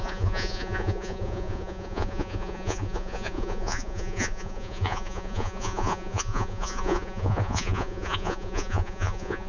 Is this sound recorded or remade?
remade